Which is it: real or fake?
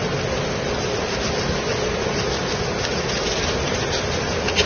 real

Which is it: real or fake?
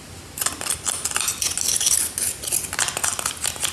real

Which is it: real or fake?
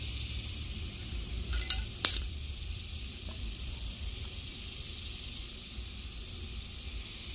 fake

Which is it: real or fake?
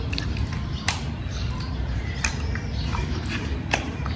fake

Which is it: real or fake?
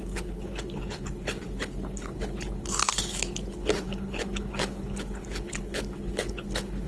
fake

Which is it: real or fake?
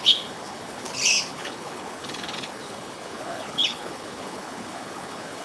fake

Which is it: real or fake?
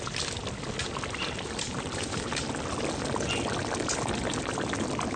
real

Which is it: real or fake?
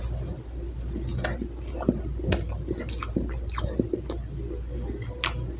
real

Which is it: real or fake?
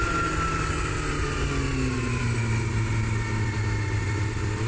real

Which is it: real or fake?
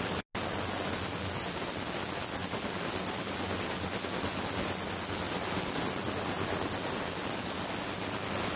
real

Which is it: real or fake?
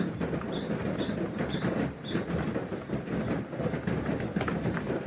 real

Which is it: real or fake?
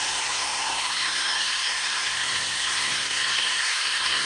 fake